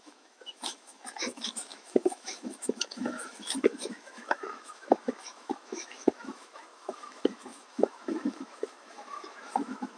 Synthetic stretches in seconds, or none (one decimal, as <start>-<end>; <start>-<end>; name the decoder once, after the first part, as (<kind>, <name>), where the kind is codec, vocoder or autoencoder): 0.0-10.0 (autoencoder, DAC-VAE)